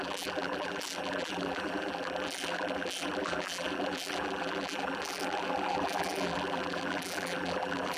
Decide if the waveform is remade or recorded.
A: remade